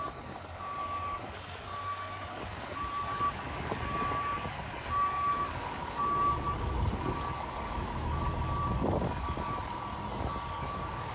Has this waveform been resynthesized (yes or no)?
yes